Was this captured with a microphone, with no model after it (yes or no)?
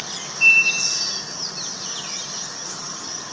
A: yes